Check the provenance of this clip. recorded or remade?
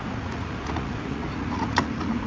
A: remade